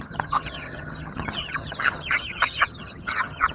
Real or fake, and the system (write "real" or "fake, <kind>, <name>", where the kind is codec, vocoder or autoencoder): fake, vocoder, HiFi-GAN